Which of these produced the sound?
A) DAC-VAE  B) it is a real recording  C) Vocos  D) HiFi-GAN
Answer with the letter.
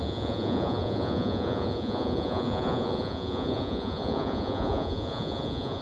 C